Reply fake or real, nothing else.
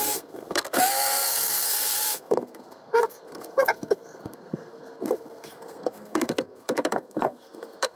fake